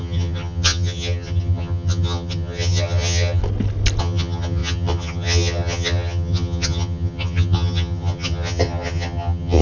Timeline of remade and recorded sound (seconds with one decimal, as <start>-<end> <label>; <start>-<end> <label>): 0.0-3.4 remade; 3.4-4.0 recorded; 4.0-9.6 remade